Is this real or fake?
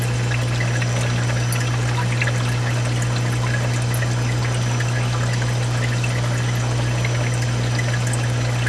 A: real